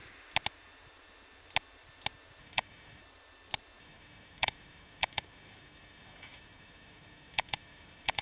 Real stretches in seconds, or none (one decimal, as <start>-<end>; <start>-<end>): 0.0-2.4; 3.0-3.8